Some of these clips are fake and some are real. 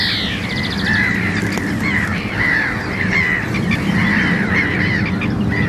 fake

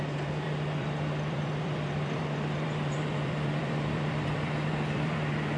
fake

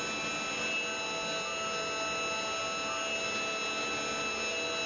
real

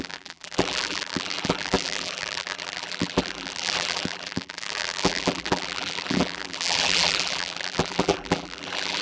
fake